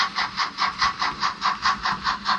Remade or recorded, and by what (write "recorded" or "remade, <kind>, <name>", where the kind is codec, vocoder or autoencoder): recorded